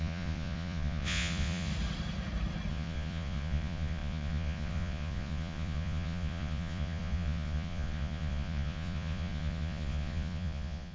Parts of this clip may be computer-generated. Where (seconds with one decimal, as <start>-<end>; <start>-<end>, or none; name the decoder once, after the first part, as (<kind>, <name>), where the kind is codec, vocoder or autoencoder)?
0.0-1.7 (vocoder, Vocos); 2.7-10.9